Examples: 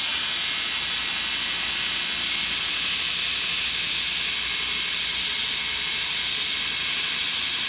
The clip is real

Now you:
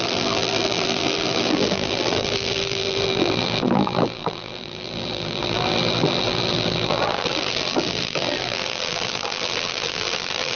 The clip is fake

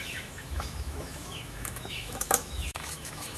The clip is fake